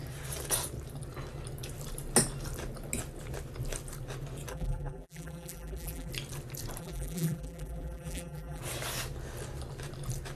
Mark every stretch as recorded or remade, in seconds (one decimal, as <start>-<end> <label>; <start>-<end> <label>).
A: 0.0-4.5 recorded; 4.5-6.1 remade; 6.1-6.8 recorded; 6.8-8.6 remade; 8.6-10.4 recorded

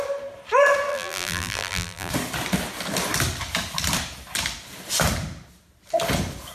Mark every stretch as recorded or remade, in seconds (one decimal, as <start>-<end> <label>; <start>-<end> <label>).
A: 0.0-0.9 recorded; 0.9-2.1 remade; 2.1-6.5 recorded

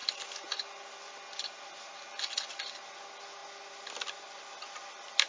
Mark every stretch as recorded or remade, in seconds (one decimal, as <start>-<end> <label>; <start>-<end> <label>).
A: 0.0-5.3 recorded

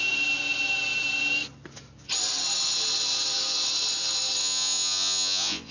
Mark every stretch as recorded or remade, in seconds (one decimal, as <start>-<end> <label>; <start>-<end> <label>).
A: 0.0-4.4 recorded; 4.4-5.7 remade

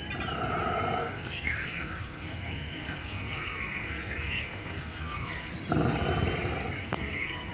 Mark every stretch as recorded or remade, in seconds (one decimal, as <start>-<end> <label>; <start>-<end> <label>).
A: 0.0-1.0 recorded; 1.0-5.5 remade; 5.5-6.8 recorded; 6.8-7.5 remade